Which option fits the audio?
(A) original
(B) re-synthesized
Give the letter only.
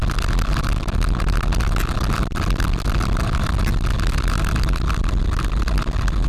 A